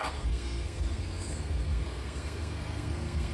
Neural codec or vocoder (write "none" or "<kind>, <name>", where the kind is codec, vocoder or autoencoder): codec, SNAC